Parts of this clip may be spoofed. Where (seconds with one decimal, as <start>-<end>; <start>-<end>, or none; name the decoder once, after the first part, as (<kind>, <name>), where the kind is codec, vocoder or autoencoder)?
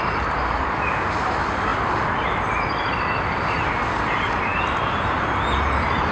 0.0-1.7 (vocoder, BigVGAN v2); 3.7-6.1